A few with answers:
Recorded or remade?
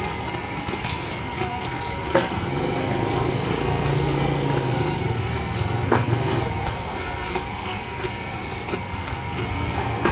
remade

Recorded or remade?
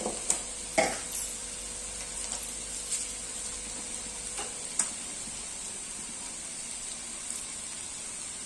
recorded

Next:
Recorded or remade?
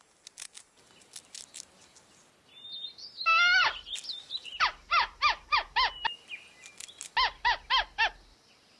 recorded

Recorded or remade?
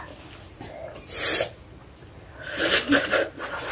recorded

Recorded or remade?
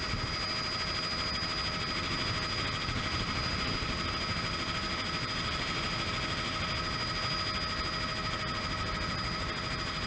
recorded